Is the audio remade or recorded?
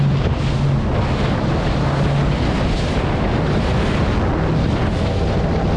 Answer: recorded